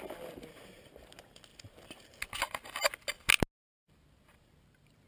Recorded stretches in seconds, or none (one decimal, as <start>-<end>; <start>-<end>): 0.0-5.1